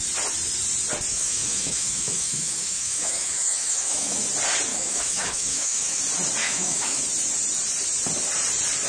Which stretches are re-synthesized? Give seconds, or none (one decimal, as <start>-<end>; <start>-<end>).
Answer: 1.1-4.2; 4.7-6.0; 6.4-7.0